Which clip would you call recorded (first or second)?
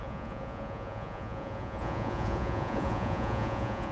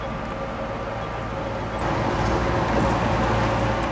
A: second